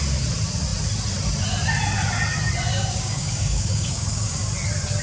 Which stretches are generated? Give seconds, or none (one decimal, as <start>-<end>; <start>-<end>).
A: 2.7-4.4